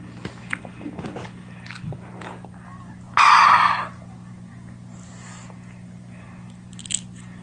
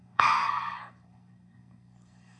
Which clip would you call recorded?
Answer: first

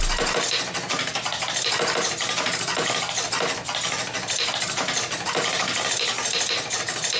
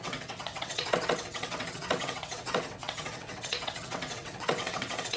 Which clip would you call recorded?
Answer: first